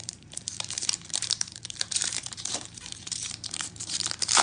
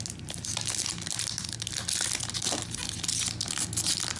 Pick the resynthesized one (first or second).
first